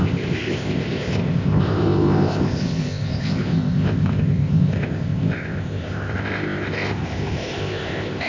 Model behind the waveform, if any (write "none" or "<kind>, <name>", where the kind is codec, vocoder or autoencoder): codec, ZipCodec